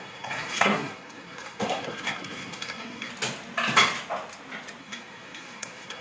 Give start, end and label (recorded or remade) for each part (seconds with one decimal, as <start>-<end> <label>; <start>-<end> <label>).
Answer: 0.0-3.1 remade; 3.1-4.8 recorded; 4.8-6.0 remade